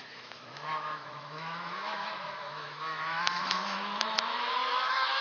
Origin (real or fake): fake